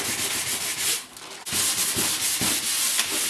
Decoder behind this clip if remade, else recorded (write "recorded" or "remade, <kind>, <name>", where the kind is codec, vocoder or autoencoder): recorded